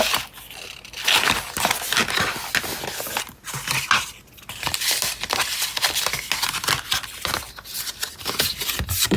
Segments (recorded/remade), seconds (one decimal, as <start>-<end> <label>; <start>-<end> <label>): 0.0-6.9 recorded; 6.9-7.5 remade; 7.5-9.2 recorded